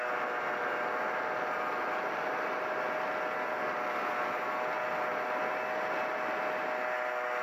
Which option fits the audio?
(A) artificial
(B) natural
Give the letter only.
B